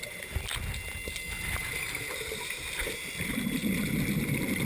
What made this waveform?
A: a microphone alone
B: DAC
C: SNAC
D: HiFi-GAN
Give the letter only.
A